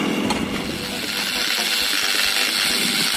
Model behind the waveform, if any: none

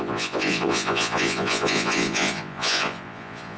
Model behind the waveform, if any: vocoder, Vocos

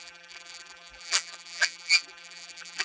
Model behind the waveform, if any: vocoder, BigVGAN v2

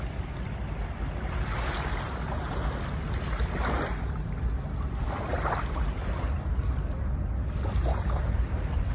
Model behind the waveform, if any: none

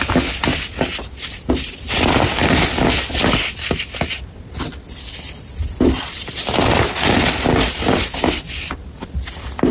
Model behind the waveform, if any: none